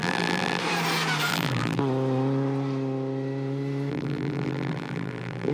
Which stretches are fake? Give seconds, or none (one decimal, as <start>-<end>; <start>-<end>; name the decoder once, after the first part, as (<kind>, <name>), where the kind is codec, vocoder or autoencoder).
0.0-0.6 (vocoder, BigVGAN v2); 1.3-1.8; 3.9-5.5